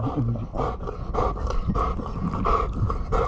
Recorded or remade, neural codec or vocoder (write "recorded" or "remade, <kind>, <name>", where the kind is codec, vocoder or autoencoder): recorded